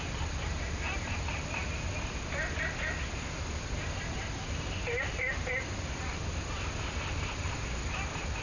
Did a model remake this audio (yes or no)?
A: no